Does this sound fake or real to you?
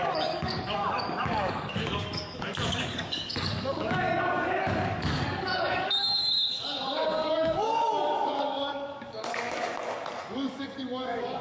fake